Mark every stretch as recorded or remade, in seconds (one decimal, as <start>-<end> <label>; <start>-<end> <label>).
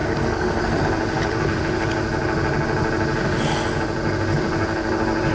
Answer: 0.0-0.8 remade; 0.8-5.3 recorded